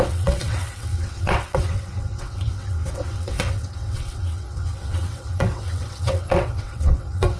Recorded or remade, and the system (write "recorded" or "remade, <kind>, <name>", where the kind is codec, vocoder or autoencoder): remade, vocoder, WaveNeXt